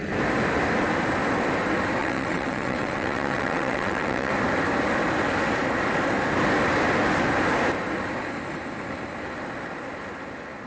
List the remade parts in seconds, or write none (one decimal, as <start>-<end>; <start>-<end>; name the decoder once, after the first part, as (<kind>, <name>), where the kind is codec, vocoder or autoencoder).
2.0-4.3 (vocoder, WaveNeXt)